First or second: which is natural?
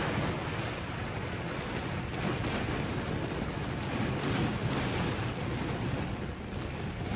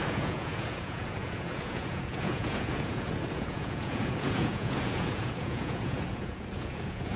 first